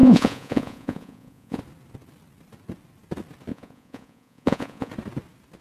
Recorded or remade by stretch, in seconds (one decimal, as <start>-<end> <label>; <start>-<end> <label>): 0.0-1.6 remade; 1.6-3.5 recorded; 3.5-4.9 remade; 4.9-5.6 recorded